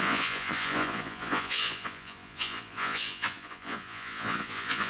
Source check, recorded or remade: remade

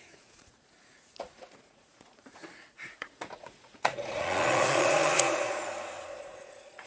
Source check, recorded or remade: remade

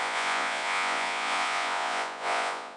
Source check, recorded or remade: remade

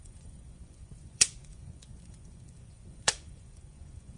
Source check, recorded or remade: remade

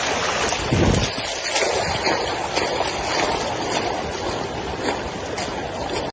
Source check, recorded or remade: recorded